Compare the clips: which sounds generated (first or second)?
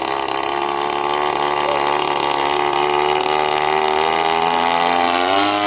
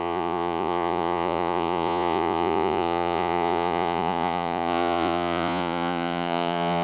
second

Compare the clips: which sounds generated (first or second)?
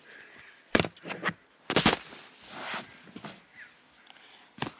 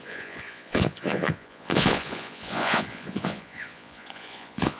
second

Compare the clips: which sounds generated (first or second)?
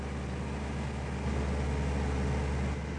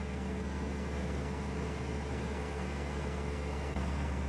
second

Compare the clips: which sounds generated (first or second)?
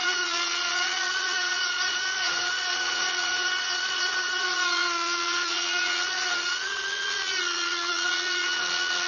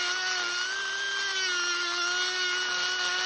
first